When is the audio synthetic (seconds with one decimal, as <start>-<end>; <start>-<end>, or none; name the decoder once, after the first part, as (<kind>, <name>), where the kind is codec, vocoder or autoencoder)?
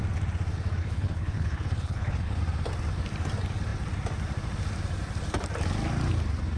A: 0.8-2.4 (codec, HILCodec)